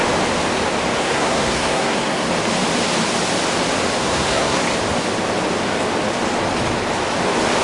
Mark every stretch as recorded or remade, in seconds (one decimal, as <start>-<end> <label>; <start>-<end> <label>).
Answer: 0.0-1.0 recorded; 1.0-2.3 remade; 2.3-4.0 recorded; 4.0-4.6 remade; 4.6-7.6 recorded